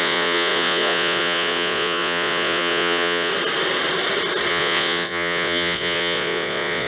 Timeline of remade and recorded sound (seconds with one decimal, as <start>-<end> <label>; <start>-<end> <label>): 0.0-3.3 remade; 3.3-4.5 recorded; 4.5-6.9 remade